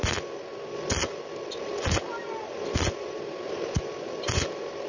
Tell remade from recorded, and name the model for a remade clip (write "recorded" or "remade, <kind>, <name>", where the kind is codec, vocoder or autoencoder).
recorded